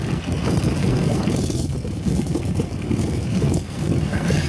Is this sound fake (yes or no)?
yes